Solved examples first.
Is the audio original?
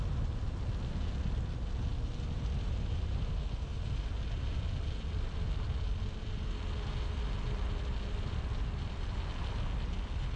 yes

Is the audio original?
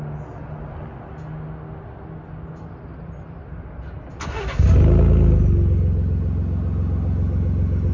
yes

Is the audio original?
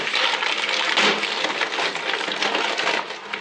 yes